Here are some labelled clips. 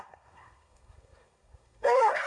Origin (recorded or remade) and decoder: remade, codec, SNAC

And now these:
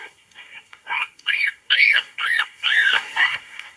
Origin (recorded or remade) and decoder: remade, codec, SNAC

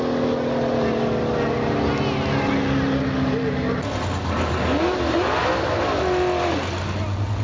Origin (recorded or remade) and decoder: recorded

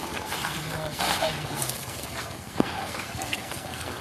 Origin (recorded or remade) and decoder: remade, codec, SNAC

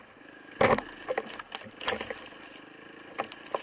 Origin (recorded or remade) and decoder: recorded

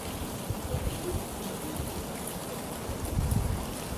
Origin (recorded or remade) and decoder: recorded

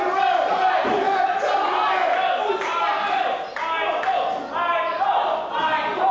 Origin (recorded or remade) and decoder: recorded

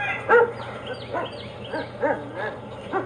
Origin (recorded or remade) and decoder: recorded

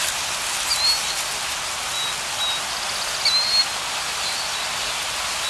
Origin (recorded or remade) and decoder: recorded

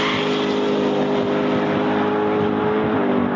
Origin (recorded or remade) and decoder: recorded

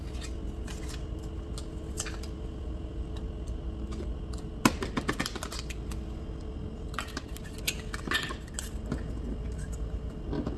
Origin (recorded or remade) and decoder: recorded